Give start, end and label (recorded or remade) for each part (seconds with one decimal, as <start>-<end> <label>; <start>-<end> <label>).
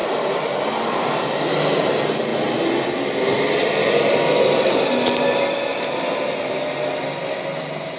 0.0-8.0 recorded